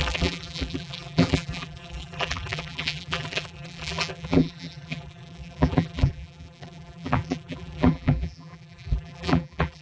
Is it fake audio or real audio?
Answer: fake